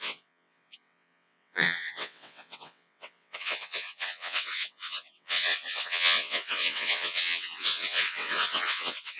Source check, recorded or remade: remade